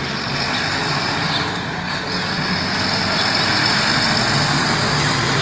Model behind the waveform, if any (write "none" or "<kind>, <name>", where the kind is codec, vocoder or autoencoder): none